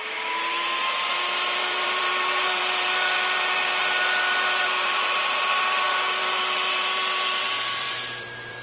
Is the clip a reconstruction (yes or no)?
yes